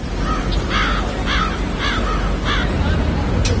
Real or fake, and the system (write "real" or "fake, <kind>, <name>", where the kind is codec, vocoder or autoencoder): real